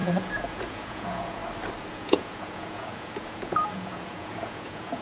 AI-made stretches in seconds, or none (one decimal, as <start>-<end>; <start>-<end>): 0.0-1.4; 1.9-5.0